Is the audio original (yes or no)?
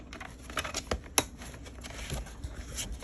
yes